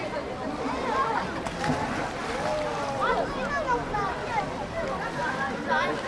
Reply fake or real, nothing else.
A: real